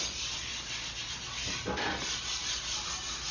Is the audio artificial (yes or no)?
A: no